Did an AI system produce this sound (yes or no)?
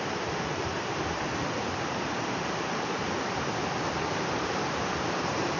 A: yes